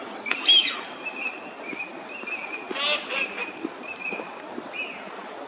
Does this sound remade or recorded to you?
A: recorded